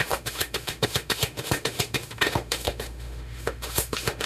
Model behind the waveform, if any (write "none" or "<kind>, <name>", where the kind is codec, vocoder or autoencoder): autoencoder, DAC-VAE